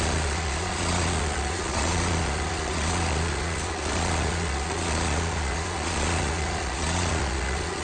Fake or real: fake